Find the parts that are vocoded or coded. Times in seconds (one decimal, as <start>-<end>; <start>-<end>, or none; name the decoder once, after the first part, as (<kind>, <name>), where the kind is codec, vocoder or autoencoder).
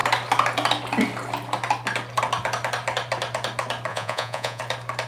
3.9-4.6 (vocoder, Vocos)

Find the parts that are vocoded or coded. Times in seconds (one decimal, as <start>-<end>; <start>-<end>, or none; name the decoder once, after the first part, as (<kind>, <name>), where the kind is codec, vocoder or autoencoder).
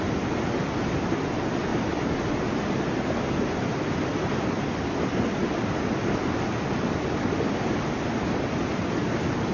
none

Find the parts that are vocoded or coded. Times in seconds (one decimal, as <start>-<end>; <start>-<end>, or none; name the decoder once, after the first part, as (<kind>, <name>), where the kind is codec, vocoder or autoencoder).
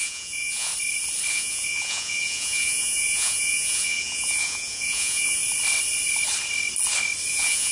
0.0-0.7 (vocoder, Vocos); 1.3-5.4; 7.3-7.7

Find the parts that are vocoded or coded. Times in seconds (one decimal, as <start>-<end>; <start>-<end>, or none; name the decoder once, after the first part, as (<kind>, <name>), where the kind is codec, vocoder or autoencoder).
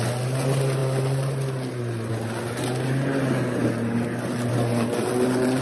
none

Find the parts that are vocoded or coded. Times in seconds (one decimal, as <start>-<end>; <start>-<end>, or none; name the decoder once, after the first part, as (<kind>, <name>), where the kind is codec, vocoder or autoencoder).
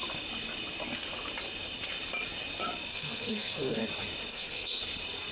2.9-3.8 (codec, SNAC); 4.3-4.8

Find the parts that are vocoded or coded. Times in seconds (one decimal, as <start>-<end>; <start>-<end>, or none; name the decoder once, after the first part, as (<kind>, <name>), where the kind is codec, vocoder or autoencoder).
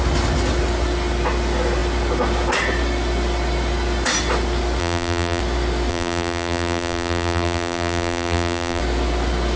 4.8-5.4 (vocoder, BigVGAN v2); 5.9-8.8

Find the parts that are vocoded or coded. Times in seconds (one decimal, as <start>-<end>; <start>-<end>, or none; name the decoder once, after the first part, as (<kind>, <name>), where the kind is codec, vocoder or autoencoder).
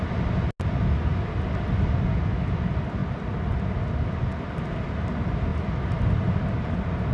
none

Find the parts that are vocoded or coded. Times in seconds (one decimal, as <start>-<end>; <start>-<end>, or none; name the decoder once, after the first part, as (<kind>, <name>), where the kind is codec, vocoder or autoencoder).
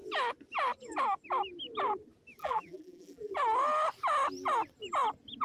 2.4-3.3 (vocoder, BigVGAN v2)